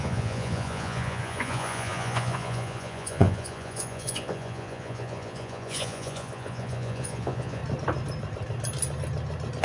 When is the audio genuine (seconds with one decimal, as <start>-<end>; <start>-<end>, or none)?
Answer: 7.6-9.6